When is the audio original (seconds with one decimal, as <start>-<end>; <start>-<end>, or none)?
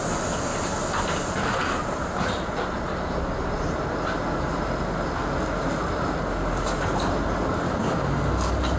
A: 0.0-8.8